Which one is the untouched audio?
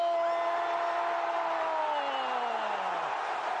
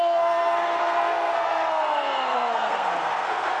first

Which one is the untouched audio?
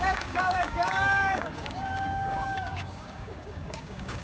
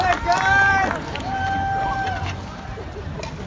second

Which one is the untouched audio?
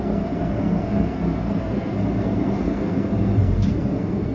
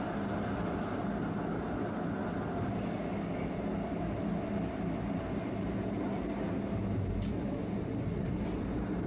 second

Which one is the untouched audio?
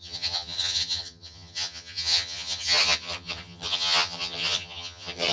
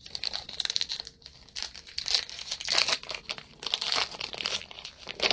second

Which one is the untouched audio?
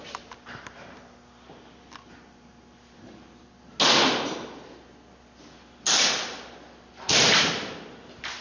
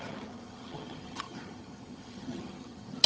first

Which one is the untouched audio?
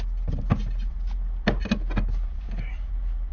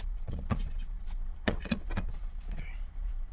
first